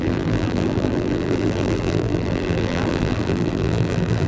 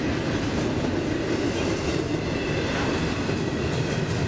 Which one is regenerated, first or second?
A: first